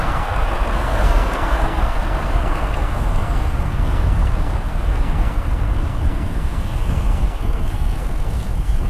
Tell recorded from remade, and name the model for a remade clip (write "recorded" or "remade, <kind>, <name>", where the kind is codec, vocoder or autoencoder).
remade, codec, SNAC